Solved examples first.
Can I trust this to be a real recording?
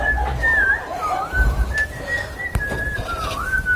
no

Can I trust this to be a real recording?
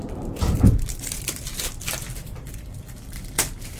no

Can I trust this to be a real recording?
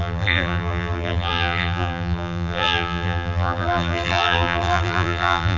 no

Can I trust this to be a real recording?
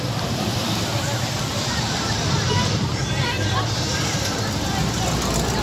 no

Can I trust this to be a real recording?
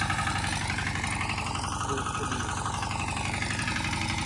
no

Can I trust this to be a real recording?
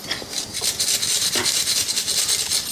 yes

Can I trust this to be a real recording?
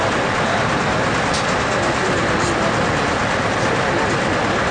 no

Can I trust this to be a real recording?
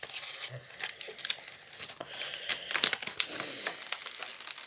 yes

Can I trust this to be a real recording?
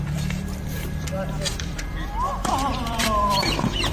no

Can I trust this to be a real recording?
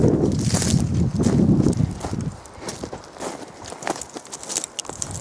yes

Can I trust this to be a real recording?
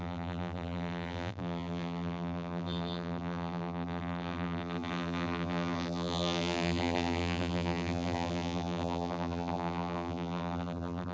no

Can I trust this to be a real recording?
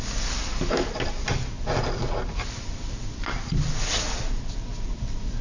yes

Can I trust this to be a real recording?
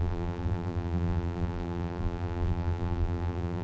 no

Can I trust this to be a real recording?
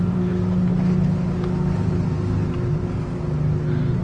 yes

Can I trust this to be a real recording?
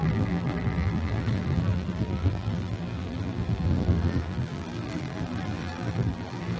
no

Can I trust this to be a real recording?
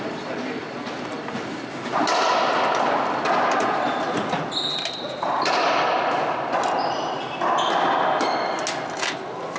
yes